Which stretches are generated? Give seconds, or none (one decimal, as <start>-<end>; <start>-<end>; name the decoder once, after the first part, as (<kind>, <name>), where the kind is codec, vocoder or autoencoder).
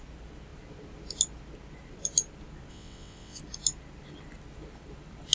2.7-3.4 (vocoder, WaveNeXt)